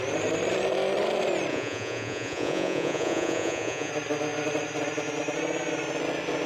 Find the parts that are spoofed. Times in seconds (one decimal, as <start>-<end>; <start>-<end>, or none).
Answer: 1.5-3.9